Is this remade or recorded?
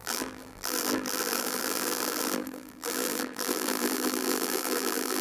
remade